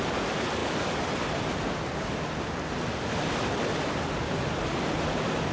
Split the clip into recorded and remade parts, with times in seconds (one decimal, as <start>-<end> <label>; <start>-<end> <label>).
0.0-5.5 recorded